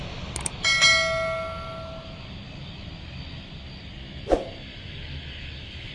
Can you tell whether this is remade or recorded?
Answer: recorded